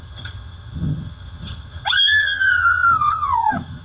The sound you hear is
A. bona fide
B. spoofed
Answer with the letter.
B